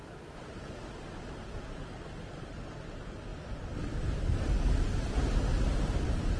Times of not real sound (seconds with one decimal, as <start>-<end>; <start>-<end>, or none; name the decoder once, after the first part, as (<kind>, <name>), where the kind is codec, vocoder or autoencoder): none